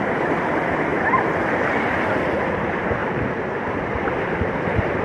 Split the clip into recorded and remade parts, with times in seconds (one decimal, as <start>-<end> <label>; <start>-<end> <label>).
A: 0.0-3.0 remade; 3.0-4.2 recorded; 4.2-5.0 remade